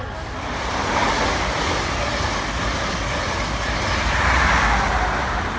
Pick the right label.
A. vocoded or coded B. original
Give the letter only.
B